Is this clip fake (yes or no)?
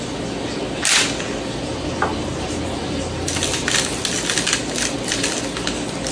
no